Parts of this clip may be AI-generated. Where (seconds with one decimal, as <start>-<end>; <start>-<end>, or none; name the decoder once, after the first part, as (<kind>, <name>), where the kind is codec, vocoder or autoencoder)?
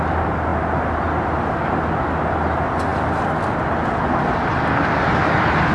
none